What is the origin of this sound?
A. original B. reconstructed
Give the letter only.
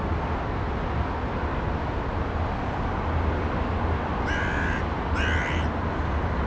A